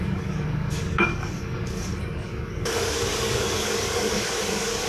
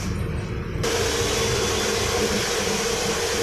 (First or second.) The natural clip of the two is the second